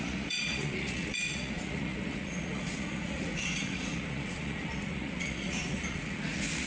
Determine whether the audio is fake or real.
fake